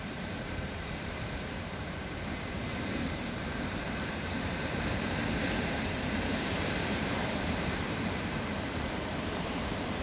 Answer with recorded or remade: remade